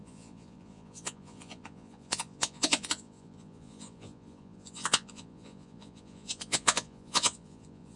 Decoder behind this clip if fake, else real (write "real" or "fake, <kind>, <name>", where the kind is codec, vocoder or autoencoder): fake, vocoder, Vocos